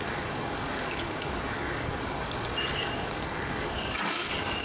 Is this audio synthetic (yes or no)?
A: yes